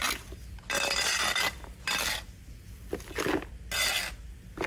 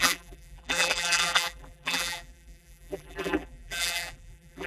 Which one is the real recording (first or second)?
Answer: first